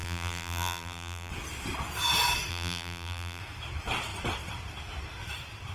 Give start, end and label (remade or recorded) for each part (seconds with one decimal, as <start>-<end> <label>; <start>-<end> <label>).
0.0-1.3 remade; 1.3-2.5 recorded; 2.5-3.4 remade; 3.4-5.7 recorded